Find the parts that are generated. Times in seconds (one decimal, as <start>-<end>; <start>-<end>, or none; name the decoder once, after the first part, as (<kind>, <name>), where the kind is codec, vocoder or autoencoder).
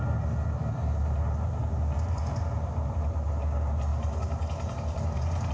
none